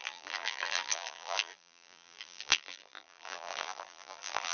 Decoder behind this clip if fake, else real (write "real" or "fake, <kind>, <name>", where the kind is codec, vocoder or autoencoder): fake, vocoder, BigVGAN v2